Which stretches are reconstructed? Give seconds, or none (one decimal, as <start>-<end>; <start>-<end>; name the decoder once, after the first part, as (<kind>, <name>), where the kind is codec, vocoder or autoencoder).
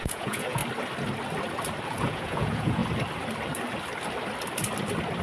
0.0-0.6 (vocoder, Vocos); 1.9-2.8